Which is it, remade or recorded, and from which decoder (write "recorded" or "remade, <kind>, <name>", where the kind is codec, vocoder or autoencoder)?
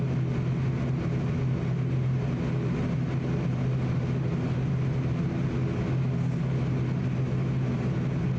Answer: recorded